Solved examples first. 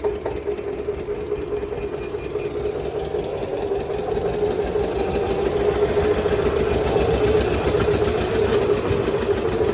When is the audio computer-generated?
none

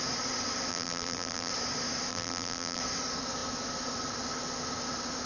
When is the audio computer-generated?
0.7-1.5; 2.1-2.8

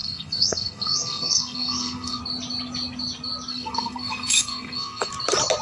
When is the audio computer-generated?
0.0-2.2; 3.5-5.1

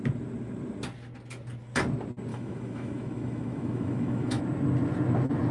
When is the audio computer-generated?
2.3-4.4